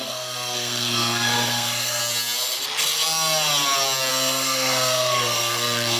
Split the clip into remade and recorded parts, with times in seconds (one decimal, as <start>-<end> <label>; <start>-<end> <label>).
0.0-2.0 remade; 2.0-4.1 recorded; 4.1-6.0 remade